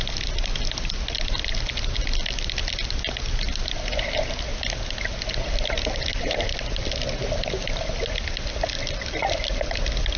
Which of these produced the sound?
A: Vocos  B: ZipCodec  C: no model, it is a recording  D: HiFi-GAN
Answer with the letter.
C